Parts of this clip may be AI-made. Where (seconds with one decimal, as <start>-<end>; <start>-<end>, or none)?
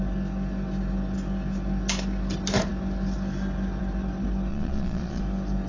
4.5-5.2